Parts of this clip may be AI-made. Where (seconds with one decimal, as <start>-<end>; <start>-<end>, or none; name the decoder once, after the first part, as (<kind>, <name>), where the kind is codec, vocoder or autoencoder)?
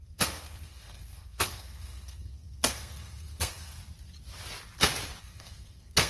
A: 0.0-3.8 (codec, SNAC); 5.2-6.1